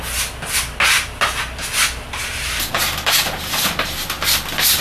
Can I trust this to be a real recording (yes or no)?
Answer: yes